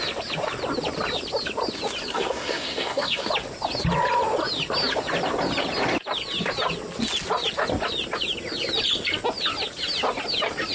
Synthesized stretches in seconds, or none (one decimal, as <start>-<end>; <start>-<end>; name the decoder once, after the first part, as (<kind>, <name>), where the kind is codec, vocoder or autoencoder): 2.1-3.3 (codec, SNAC)